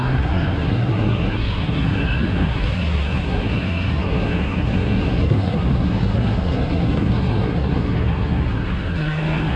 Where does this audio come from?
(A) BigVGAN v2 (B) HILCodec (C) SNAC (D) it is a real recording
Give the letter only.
C